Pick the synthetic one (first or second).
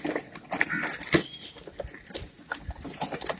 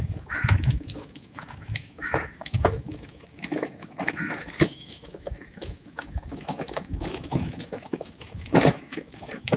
second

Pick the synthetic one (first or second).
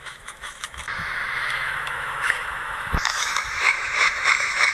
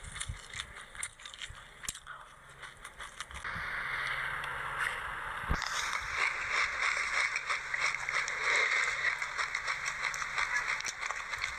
first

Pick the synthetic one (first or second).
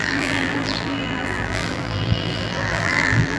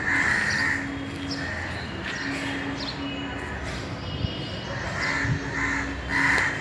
first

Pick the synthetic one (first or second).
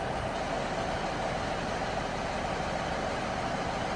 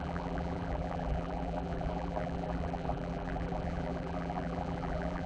second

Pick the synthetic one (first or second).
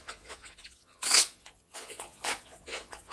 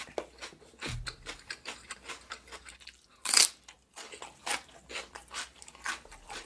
first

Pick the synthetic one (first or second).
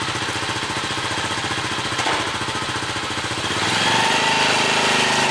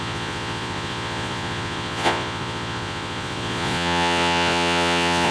second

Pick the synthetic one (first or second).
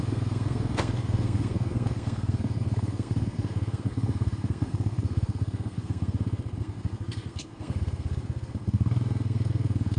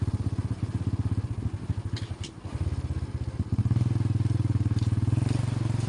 first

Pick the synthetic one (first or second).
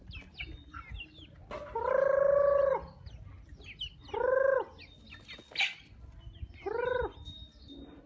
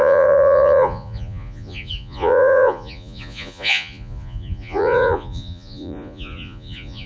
second